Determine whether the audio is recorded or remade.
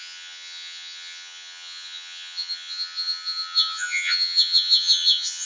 remade